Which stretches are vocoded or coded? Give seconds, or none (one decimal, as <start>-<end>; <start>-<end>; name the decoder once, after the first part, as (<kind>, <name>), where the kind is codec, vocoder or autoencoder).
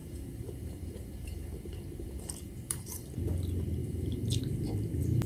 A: 0.0-3.2 (vocoder, BigVGAN v2); 3.8-4.4